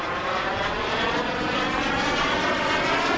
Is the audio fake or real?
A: real